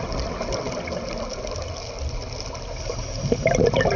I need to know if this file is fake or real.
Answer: real